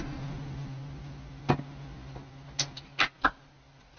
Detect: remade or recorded recorded